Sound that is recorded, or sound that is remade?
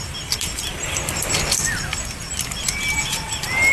recorded